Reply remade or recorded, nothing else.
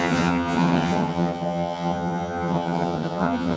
remade